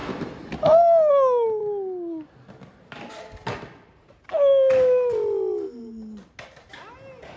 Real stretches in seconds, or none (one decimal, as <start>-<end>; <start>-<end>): 0.0-7.4